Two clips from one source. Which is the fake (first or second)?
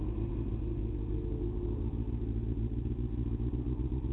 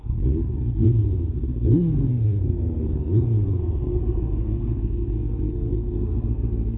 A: second